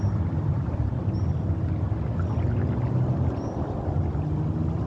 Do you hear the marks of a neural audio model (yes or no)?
no